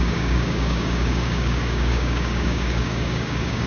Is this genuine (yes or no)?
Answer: no